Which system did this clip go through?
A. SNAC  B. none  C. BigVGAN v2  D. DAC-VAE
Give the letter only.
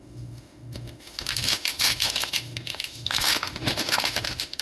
D